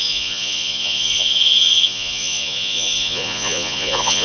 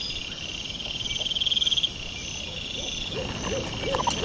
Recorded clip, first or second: second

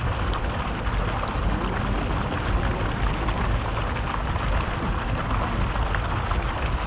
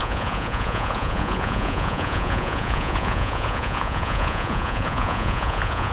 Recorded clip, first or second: first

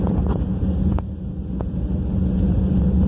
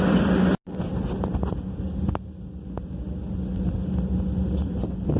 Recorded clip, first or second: second